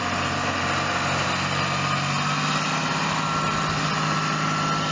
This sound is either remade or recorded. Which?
recorded